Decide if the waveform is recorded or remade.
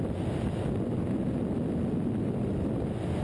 recorded